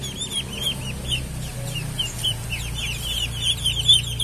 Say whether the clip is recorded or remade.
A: recorded